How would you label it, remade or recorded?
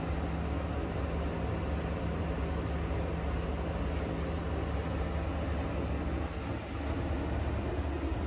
recorded